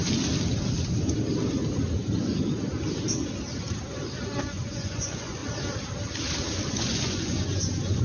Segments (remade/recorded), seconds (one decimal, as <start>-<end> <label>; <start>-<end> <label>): 0.0-4.4 recorded; 4.4-5.4 remade; 5.4-6.7 recorded; 6.7-8.0 remade